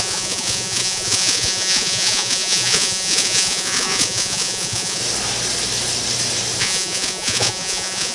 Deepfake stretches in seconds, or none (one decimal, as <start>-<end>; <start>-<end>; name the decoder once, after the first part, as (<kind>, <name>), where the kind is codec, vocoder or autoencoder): 0.0-5.0 (vocoder, Vocos); 6.6-8.1